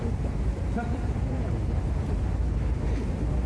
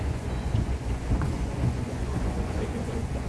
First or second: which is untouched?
first